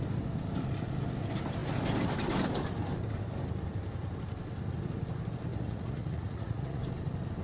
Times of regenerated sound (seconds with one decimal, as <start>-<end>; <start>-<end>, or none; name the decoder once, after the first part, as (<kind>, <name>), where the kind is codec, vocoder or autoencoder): 5.5-6.8 (vocoder, Vocos)